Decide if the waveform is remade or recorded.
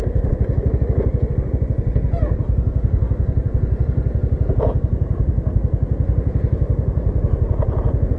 recorded